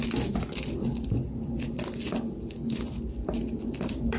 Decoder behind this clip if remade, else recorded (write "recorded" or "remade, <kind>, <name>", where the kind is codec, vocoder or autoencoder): recorded